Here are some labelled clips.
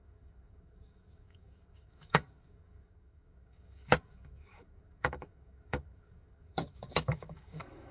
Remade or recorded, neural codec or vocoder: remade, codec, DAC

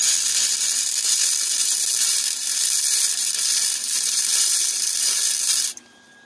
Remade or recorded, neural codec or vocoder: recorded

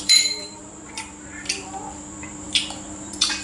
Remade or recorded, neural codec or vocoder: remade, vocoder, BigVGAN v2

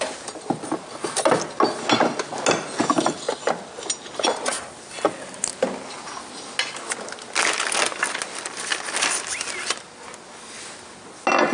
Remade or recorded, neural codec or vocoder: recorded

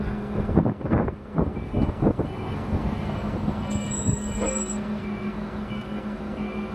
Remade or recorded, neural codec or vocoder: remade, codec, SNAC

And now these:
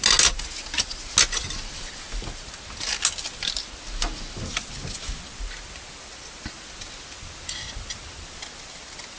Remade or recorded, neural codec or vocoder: recorded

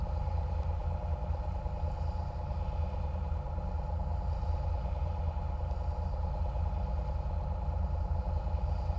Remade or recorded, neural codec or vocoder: recorded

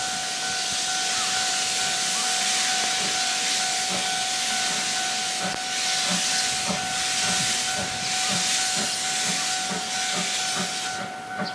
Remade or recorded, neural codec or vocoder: recorded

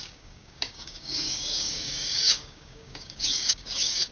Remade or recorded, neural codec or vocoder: remade, codec, DAC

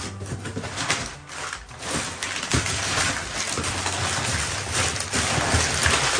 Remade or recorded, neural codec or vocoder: recorded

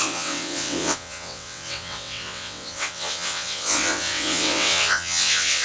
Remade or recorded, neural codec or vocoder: remade, vocoder, WaveNeXt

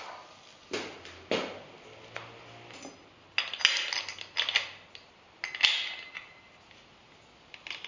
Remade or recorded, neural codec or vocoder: recorded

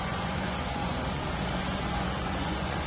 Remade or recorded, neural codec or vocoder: remade, vocoder, Vocos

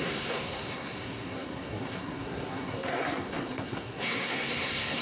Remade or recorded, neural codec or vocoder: remade, codec, SNAC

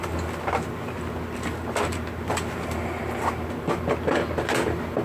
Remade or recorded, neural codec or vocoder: recorded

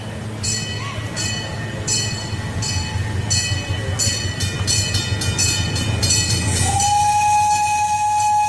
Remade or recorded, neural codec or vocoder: recorded